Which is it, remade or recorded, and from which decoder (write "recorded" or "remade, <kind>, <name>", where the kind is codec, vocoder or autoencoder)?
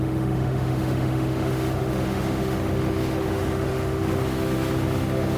remade, autoencoder, DAC-VAE